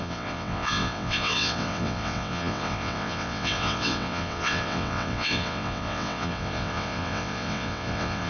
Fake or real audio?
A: fake